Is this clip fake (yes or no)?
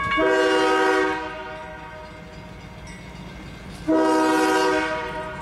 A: no